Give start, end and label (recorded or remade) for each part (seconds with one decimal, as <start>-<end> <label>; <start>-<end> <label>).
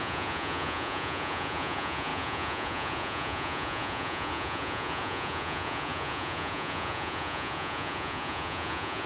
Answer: 0.0-9.1 remade